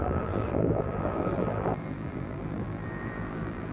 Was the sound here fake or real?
fake